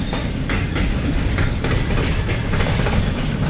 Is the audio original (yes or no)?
yes